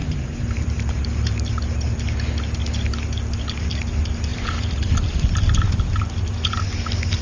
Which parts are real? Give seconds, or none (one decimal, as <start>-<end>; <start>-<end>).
1.5-4.3; 5.4-7.2